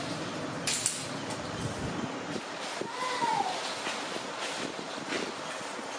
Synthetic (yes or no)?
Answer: no